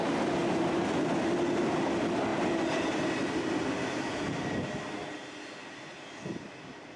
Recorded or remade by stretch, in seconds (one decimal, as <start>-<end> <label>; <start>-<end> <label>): 0.0-7.0 recorded